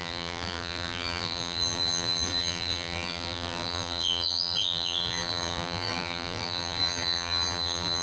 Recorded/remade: remade